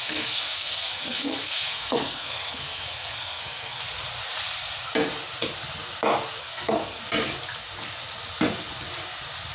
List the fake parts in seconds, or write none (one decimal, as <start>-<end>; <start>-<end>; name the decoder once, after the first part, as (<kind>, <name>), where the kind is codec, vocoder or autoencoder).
0.0-3.8 (codec, SNAC); 6.4-7.0